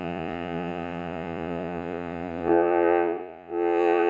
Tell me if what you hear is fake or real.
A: fake